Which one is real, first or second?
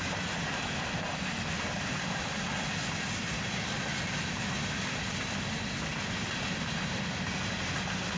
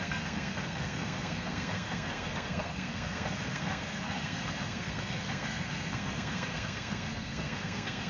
first